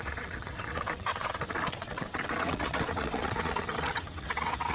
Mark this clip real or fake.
fake